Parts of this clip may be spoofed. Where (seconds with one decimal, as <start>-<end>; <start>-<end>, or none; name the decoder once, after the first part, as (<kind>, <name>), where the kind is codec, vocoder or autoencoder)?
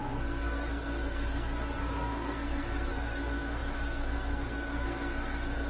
0.0-5.7 (codec, SNAC)